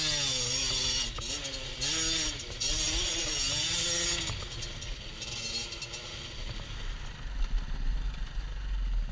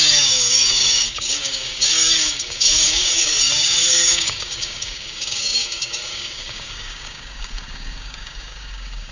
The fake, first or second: second